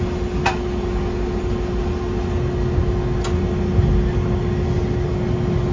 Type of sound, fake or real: real